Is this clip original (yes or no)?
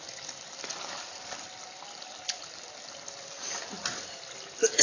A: yes